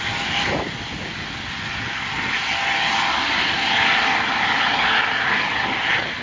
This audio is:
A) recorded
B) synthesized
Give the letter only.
A